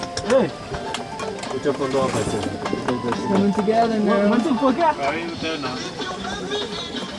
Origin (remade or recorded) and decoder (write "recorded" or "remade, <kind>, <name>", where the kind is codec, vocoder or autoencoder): recorded